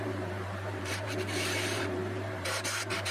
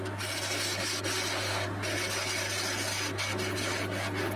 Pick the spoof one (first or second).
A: first